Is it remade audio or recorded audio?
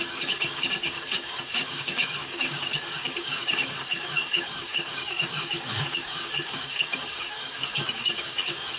remade